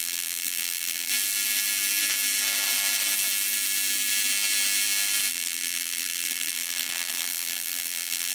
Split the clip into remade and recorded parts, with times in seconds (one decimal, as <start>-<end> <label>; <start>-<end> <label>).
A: 0.0-1.1 remade; 1.1-5.3 recorded; 5.3-8.3 remade